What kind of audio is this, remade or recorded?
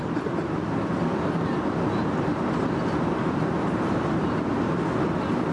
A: recorded